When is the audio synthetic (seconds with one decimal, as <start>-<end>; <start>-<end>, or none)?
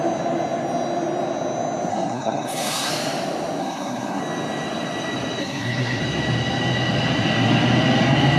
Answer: 1.9-2.9; 3.6-4.2; 5.4-6.0